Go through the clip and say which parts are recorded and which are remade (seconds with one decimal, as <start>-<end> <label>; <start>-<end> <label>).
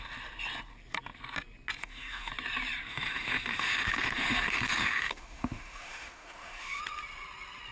0.0-1.8 recorded; 1.8-2.3 remade; 2.3-2.9 recorded; 2.9-6.8 remade; 6.8-7.7 recorded